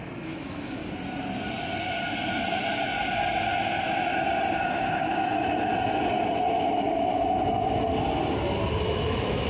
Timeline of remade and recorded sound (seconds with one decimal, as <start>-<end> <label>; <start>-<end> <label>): 0.0-0.8 remade; 0.8-4.6 recorded; 4.6-5.7 remade; 5.7-8.8 recorded; 8.8-9.5 remade

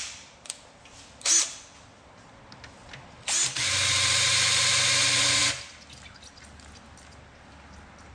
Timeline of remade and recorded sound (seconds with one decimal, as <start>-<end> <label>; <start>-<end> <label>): 0.0-8.1 recorded

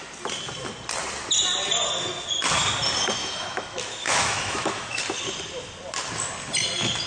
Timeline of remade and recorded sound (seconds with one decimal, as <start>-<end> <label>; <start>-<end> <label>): 0.0-3.2 recorded; 3.2-5.0 remade; 5.0-7.1 recorded

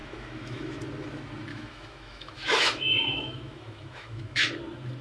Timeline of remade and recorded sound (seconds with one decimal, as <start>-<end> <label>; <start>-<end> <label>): 0.0-0.8 remade; 0.8-1.5 recorded; 1.5-4.5 remade; 4.5-5.0 recorded

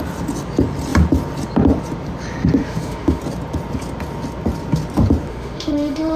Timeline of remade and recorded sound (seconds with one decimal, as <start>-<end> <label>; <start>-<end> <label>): 0.0-2.6 recorded; 2.6-3.2 remade; 3.2-5.3 recorded; 5.3-6.2 remade